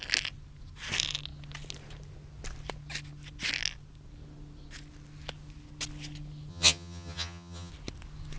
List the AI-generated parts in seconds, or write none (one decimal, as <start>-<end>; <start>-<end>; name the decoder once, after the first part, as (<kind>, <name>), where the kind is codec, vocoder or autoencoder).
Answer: 6.5-7.7 (vocoder, HiFi-GAN)

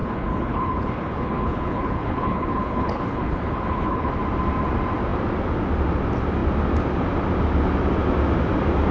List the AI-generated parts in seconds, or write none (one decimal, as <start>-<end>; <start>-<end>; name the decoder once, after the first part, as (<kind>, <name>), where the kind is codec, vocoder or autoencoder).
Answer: 0.0-4.1 (codec, HILCodec)

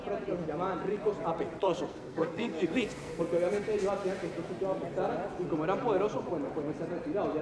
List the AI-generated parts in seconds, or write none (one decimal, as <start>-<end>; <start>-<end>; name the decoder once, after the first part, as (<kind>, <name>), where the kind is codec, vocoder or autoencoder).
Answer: 1.6-3.2 (codec, SNAC)

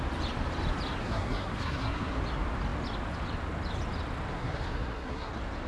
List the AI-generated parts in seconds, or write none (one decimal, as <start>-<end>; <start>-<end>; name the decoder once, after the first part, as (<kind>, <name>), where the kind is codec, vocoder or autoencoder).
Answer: 1.0-2.2 (codec, SNAC); 4.3-5.3

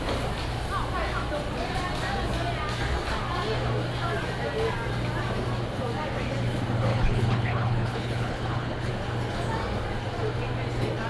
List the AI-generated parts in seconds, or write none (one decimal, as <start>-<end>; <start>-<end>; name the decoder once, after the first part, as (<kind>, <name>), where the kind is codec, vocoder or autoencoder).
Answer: 6.9-8.9 (codec, HILCodec)